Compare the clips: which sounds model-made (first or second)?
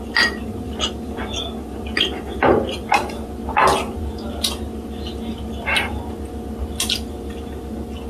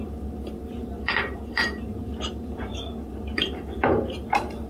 second